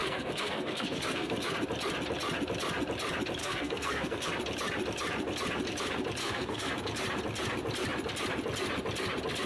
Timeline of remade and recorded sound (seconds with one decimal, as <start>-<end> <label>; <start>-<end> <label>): 0.0-1.5 remade; 1.5-3.4 recorded; 3.4-4.3 remade; 4.3-6.2 recorded; 6.2-6.7 remade; 6.7-9.5 recorded